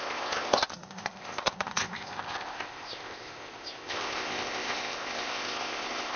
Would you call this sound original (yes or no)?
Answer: no